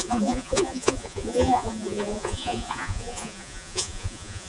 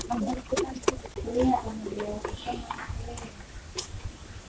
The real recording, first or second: second